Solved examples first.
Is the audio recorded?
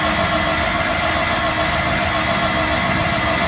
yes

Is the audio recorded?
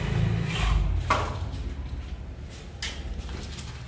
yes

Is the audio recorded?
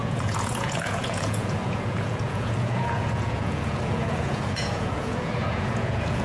no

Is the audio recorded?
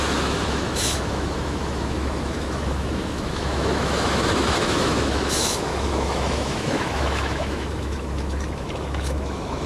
no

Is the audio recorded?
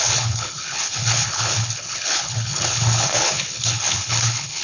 no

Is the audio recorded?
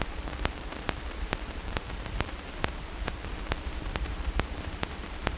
no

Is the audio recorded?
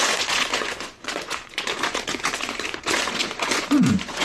no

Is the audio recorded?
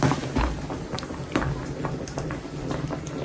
yes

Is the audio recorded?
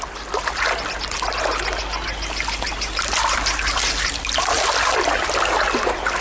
yes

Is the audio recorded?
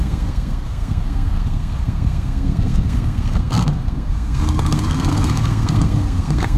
no